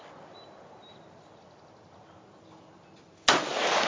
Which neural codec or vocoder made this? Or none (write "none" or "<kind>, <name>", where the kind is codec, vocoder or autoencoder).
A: none